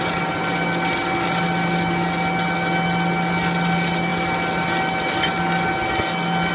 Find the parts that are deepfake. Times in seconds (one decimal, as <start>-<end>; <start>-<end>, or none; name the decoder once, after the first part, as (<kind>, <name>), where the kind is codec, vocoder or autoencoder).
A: none